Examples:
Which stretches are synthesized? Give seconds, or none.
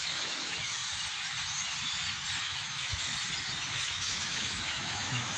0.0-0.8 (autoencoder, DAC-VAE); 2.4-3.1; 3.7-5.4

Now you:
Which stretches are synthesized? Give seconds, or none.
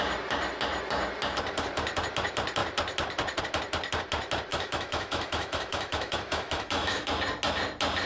4.5-7.1 (autoencoder, DAC-VAE)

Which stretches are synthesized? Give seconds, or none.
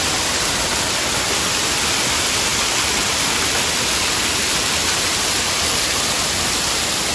none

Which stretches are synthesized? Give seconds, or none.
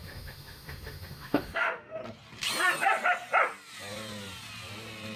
0.0-2.0 (autoencoder, DAC-VAE)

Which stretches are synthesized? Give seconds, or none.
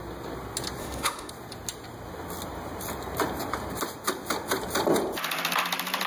0.8-1.3 (autoencoder, DAC-VAE)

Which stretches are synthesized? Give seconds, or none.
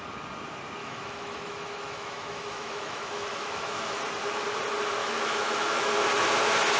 0.8-4.0 (autoencoder, DAC-VAE); 5.0-5.9